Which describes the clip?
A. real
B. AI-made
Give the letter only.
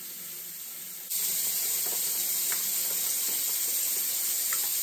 A